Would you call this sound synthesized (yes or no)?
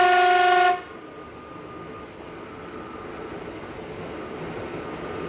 no